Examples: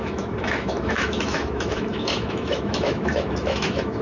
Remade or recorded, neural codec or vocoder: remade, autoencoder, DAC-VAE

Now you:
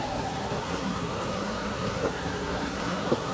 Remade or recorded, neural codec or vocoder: remade, codec, SNAC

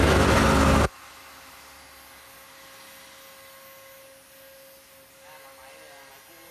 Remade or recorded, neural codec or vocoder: recorded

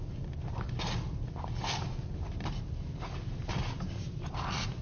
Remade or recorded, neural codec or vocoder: recorded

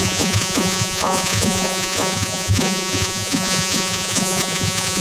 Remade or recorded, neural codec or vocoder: remade, vocoder, Vocos